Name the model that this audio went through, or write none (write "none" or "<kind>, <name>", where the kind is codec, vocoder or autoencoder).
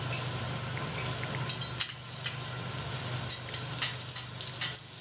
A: none